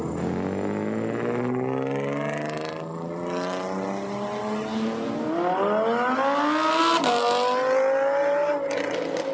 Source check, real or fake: real